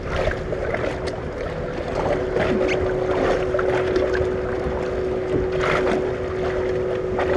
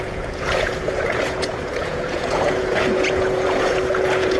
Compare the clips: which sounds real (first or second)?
first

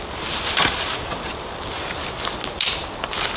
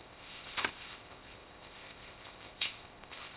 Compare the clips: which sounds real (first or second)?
first